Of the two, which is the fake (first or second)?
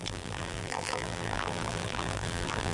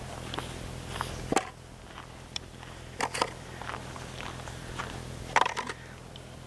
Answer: first